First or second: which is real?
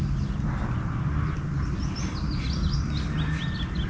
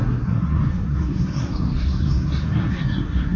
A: first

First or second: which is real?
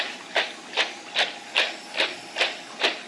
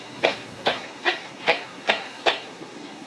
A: first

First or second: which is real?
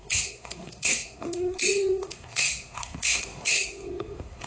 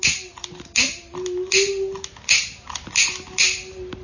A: second